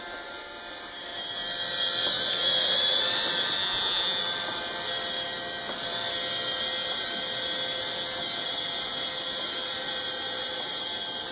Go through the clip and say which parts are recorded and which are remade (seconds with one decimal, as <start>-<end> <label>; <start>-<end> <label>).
0.0-3.6 recorded; 3.6-4.2 remade; 4.2-11.3 recorded